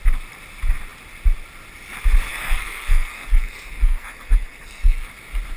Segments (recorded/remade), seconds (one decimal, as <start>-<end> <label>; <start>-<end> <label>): 0.0-2.3 recorded; 2.3-5.1 remade; 5.1-5.6 recorded